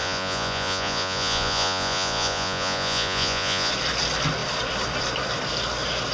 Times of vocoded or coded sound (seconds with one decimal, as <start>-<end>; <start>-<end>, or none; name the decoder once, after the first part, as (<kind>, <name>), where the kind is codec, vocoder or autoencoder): 0.0-3.7 (vocoder, Vocos)